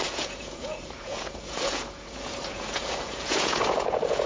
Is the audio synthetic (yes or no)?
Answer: yes